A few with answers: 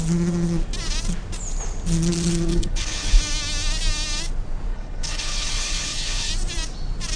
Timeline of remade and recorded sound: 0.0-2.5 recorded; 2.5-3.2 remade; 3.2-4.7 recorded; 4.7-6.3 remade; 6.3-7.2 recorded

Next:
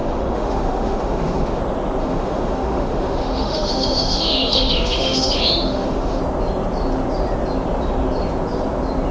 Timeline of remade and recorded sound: 0.0-1.6 remade; 1.6-2.0 recorded; 2.0-6.2 remade; 6.2-9.1 recorded

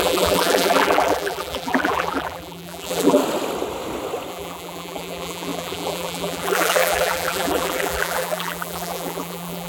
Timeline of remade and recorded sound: 0.0-3.2 remade; 3.2-4.3 recorded; 4.3-9.7 remade

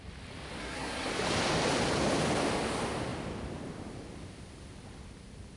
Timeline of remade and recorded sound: 0.0-0.6 recorded; 0.6-1.1 remade; 1.1-5.6 recorded

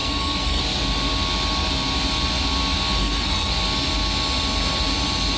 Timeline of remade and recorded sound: 0.0-0.6 remade; 0.6-3.0 recorded; 3.0-3.5 remade; 3.5-5.4 recorded

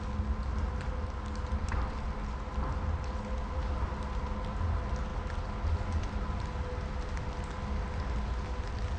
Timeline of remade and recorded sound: 0.0-9.0 recorded